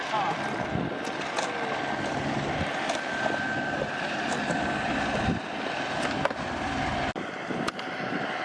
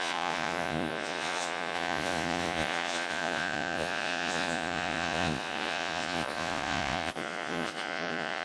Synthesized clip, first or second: second